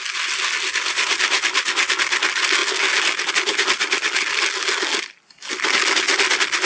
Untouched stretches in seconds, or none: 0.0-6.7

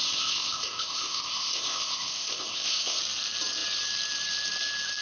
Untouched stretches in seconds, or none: 3.0-5.0

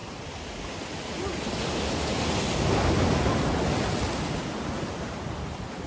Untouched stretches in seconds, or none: 0.0-5.9

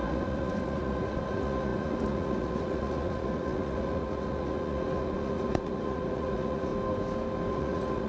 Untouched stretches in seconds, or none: 6.7-7.5

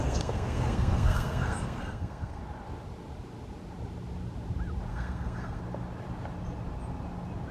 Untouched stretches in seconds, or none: 2.4-4.9; 5.6-7.5